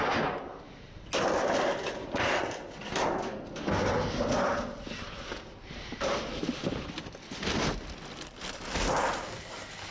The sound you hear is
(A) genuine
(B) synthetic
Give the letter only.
A